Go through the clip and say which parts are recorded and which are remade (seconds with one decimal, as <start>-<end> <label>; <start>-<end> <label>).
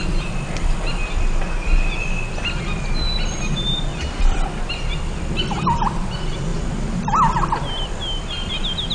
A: 0.0-8.9 recorded